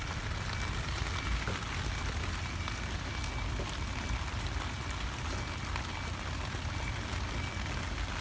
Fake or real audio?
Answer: real